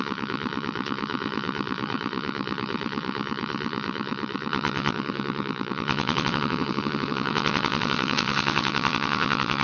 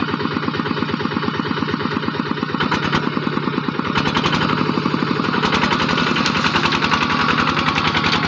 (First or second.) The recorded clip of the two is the second